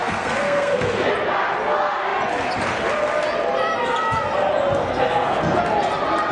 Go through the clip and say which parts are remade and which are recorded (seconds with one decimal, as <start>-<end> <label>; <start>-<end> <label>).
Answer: 0.0-1.1 remade; 1.1-4.8 recorded; 4.8-5.6 remade; 5.6-6.3 recorded